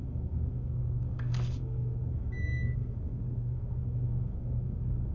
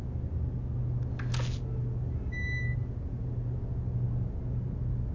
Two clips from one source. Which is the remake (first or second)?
first